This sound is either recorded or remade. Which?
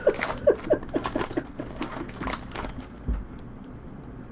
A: recorded